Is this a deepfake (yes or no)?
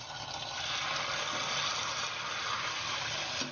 no